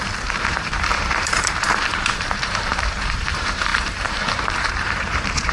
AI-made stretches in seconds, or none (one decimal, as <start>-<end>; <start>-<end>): 0.0-5.5